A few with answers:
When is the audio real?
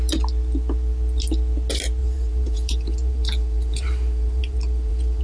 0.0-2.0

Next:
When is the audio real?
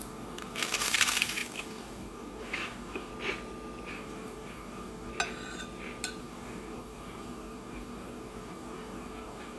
3.1-3.9; 5.1-6.2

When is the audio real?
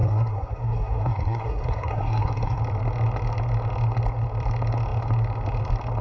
2.6-6.0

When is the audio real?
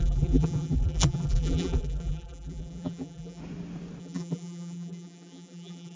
3.4-4.0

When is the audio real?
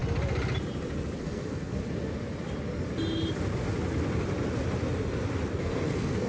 0.0-1.2; 1.8-5.6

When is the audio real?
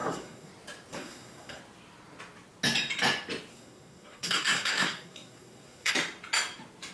0.5-0.9; 1.6-3.5; 5.9-6.9